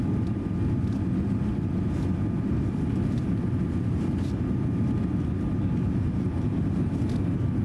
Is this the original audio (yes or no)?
yes